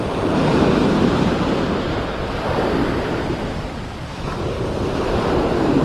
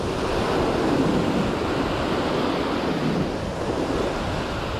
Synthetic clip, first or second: first